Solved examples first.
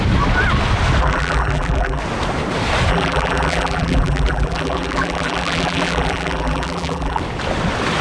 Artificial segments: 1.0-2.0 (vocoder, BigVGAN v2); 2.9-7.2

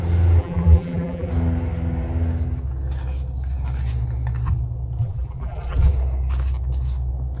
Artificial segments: 0.4-1.3 (vocoder, BigVGAN v2); 5.0-5.9

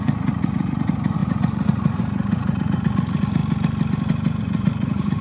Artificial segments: 0.0-3.4 (vocoder, Vocos); 4.4-5.2